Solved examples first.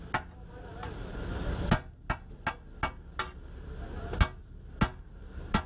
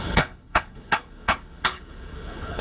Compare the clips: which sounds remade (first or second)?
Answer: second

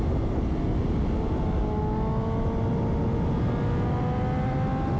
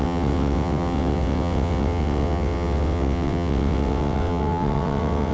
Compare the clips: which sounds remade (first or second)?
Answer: second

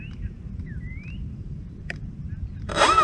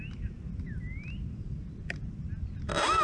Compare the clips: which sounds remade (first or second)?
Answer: first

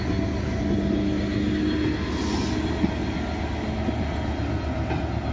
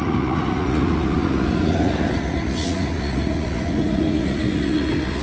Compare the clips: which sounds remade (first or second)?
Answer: second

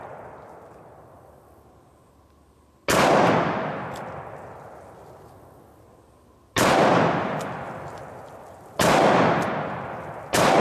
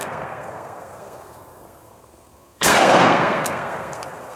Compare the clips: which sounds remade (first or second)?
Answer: second